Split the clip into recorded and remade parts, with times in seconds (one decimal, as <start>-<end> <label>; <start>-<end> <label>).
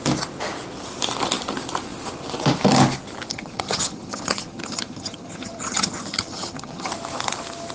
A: 0.0-3.3 recorded; 3.3-6.9 remade; 6.9-7.7 recorded